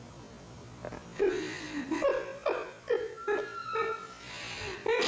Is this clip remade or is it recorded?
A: recorded